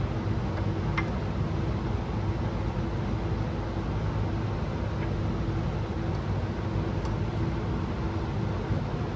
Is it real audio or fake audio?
real